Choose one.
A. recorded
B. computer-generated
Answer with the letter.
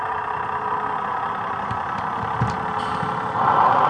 A